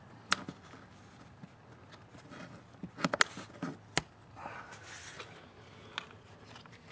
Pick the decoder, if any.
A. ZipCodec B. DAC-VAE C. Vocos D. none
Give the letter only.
D